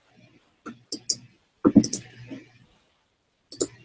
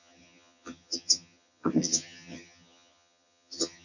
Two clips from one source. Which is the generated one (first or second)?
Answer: second